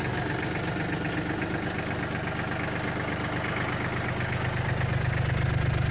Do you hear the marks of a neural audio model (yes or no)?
no